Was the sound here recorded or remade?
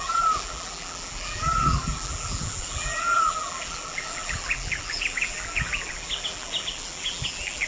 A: remade